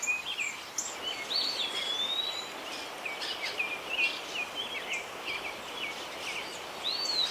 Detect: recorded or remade recorded